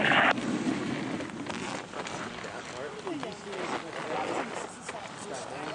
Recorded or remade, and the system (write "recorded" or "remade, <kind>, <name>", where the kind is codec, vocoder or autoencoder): recorded